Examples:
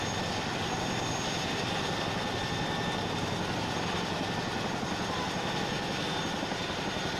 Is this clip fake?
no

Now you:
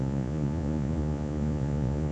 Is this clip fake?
yes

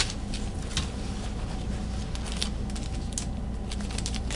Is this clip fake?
no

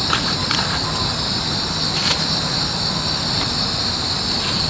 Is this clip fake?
no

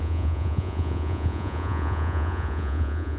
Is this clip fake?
yes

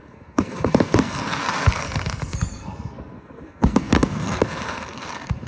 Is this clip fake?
yes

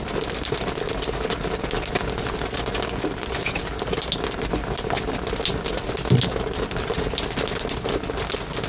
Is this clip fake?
no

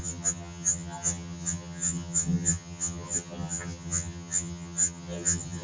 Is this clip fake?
yes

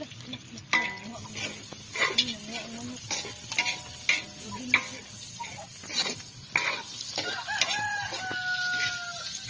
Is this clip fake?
no